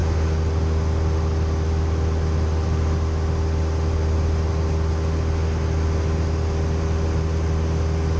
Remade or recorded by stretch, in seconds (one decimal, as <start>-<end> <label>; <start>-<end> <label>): 0.0-8.2 recorded